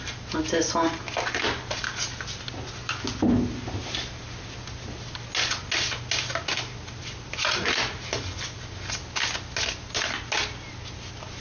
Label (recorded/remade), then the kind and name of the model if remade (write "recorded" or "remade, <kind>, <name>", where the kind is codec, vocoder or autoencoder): recorded